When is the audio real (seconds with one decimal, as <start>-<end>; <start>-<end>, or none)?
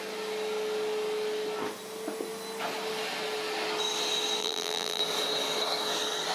0.0-4.4; 5.0-6.3